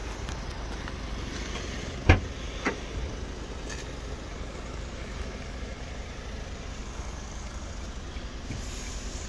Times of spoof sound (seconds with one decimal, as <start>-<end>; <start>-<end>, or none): 4.3-5.9; 6.8-7.7